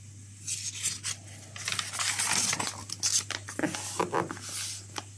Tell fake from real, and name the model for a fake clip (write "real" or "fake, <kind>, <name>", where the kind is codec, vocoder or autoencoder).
real